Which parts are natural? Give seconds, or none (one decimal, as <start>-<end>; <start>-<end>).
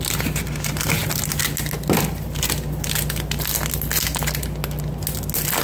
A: 0.0-5.6